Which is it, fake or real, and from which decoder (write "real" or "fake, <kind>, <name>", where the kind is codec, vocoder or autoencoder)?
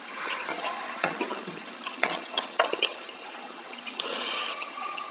fake, vocoder, HiFi-GAN